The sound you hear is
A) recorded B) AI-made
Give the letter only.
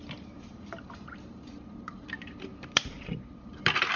B